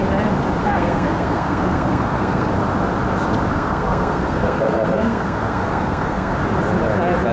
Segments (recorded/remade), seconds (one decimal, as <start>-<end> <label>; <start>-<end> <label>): 0.0-0.6 recorded; 0.6-2.5 remade; 2.5-3.5 recorded; 3.5-6.3 remade; 6.3-7.3 recorded